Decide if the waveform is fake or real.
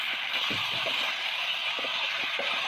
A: real